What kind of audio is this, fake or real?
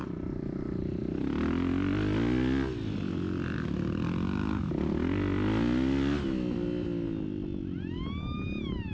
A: real